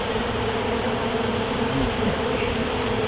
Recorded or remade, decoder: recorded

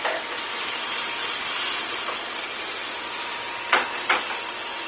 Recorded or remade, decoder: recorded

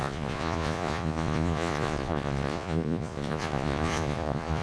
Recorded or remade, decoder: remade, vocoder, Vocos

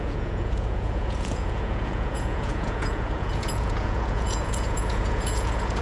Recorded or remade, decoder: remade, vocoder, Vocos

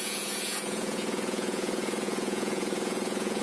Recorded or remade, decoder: remade, vocoder, Vocos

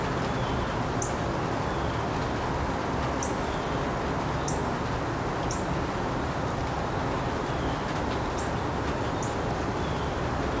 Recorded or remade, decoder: recorded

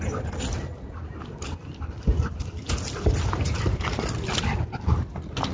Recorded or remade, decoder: recorded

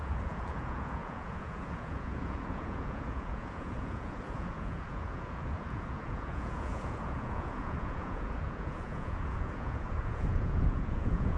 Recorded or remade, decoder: remade, vocoder, Vocos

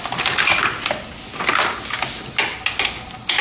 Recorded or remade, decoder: recorded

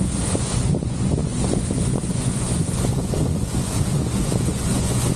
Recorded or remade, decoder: remade, vocoder, Vocos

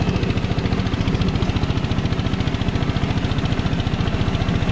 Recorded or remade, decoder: recorded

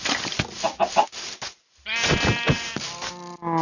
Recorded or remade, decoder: recorded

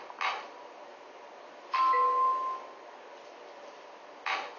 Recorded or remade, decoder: recorded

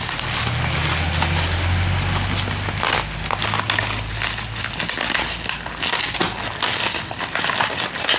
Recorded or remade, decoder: recorded